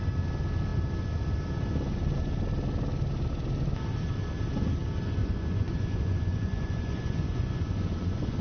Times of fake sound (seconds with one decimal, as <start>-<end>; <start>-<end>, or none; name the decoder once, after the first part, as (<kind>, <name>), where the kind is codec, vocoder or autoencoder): 5.2-8.4 (vocoder, Vocos)